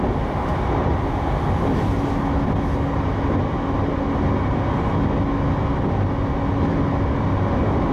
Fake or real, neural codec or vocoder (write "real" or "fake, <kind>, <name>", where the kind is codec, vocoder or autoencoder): real